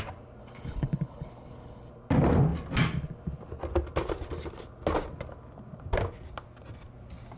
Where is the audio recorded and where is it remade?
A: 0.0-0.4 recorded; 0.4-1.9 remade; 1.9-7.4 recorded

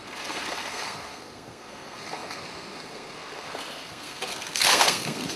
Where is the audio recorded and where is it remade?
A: 0.0-5.4 remade

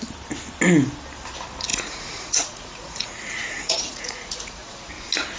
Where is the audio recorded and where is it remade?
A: 0.0-1.7 recorded; 1.7-4.9 remade; 4.9-5.4 recorded

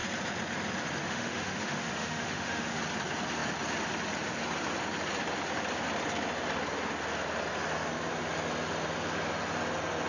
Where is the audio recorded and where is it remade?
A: 0.0-1.0 recorded; 1.0-2.8 remade; 2.8-10.1 recorded

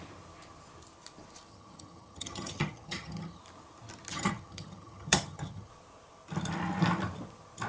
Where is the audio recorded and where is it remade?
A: 0.0-1.5 recorded; 1.5-3.4 remade; 3.4-4.1 recorded; 4.1-5.7 remade; 5.7-7.7 recorded

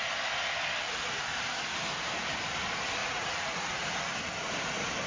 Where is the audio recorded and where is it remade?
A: 0.0-3.0 recorded; 3.0-3.8 remade; 3.8-5.1 recorded

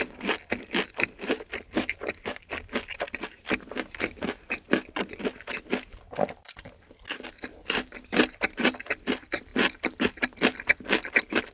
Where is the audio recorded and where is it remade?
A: 0.0-11.5 recorded

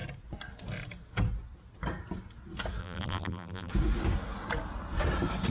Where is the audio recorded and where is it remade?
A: 0.0-2.8 recorded; 2.8-3.7 remade; 3.7-5.5 recorded